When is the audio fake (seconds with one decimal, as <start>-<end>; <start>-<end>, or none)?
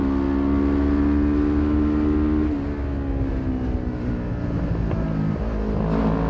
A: none